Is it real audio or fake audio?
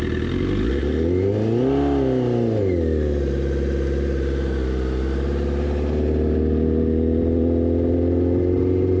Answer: real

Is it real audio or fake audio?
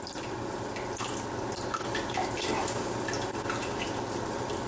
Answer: real